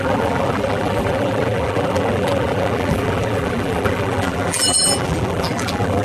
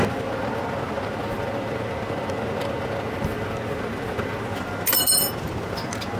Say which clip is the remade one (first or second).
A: first